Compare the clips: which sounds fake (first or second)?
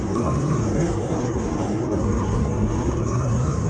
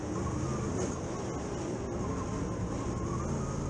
first